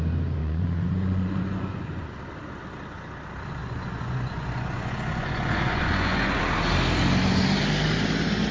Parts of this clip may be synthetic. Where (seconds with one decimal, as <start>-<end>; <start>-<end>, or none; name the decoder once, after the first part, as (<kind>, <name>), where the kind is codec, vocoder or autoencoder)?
0.4-2.1 (vocoder, Vocos); 3.6-6.4